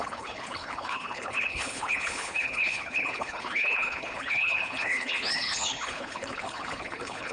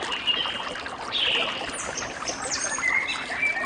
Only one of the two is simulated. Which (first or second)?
first